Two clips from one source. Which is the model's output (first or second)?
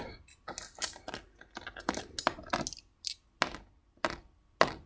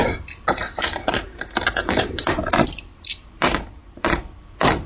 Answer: second